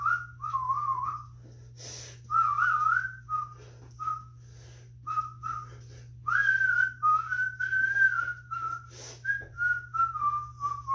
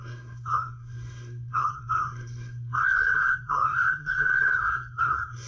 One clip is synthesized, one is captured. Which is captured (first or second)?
first